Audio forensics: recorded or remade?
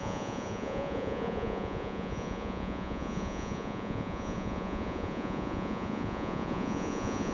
remade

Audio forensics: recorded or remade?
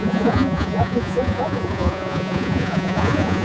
remade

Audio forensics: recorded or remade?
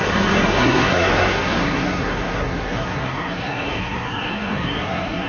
remade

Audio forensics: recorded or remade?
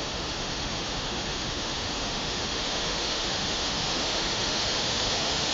remade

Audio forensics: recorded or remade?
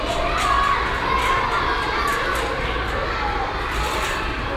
recorded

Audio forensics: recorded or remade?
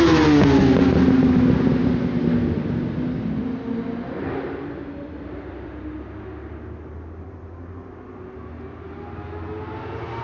recorded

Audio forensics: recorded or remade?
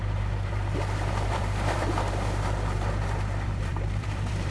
remade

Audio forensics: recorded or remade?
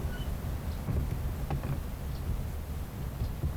recorded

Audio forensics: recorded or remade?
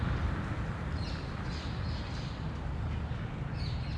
recorded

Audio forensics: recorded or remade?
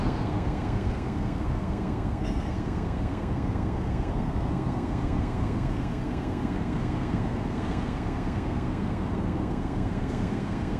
remade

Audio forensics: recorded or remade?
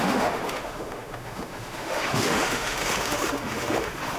remade